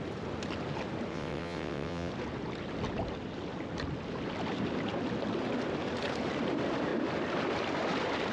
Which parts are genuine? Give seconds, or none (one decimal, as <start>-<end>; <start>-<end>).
0.0-1.1; 2.1-8.3